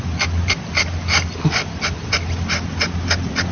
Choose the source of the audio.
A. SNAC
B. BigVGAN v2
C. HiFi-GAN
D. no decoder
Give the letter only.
D